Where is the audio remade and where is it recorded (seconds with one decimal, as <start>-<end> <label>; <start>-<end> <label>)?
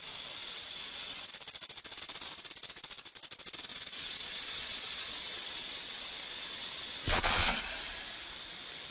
0.0-0.4 recorded; 0.4-1.3 remade; 1.3-3.7 recorded; 3.7-7.6 remade; 7.6-8.9 recorded